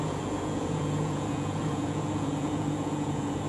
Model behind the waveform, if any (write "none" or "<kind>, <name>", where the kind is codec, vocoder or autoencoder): vocoder, Vocos